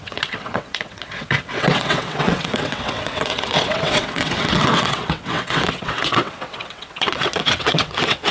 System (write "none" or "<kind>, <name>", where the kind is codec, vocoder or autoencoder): vocoder, WaveNeXt